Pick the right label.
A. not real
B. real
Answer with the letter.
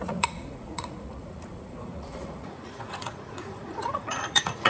A